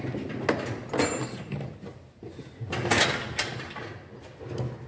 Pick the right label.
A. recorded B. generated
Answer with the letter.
A